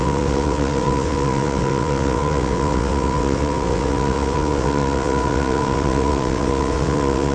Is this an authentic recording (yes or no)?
no